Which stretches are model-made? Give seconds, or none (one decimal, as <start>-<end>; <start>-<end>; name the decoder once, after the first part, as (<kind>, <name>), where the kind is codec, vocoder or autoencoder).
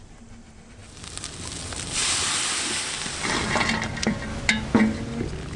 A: 4.3-4.8 (autoencoder, DAC-VAE)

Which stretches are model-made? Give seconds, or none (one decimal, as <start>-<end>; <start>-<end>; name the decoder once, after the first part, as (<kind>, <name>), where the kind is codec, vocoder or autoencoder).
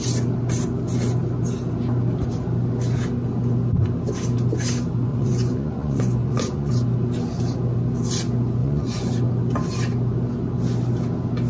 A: 5.1-6.7 (vocoder, Vocos); 8.6-9.1